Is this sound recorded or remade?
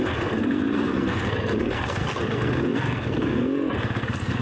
remade